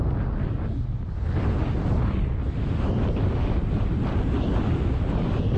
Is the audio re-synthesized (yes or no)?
no